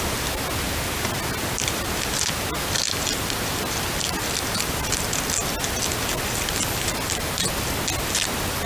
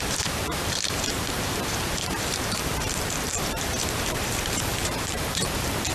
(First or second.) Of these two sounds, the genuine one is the first